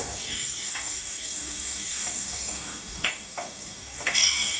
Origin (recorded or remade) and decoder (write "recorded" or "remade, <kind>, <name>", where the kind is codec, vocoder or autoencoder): remade, codec, DAC